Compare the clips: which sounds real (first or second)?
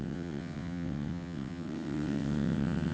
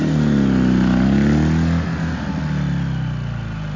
second